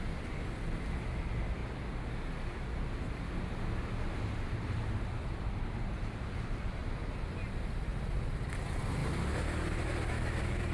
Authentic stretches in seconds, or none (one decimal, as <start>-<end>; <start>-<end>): 1.6-4.9; 6.8-7.5; 7.9-8.6; 9.0-10.1